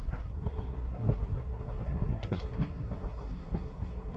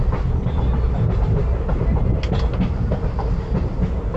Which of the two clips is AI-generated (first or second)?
first